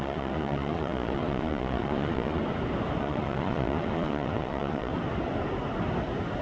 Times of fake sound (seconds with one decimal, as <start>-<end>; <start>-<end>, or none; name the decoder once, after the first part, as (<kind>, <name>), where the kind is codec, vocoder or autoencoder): 0.0-2.4 (vocoder, Vocos); 3.0-4.9

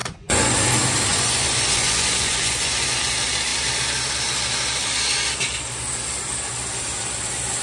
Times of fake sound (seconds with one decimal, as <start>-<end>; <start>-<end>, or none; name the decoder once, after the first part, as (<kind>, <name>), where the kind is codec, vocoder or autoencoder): 0.0-0.6 (vocoder, Vocos); 1.1-3.1